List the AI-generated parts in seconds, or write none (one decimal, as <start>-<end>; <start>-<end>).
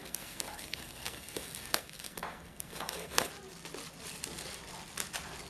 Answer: 0.0-3.3